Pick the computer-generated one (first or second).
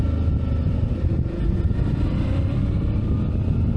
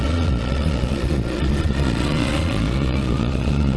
second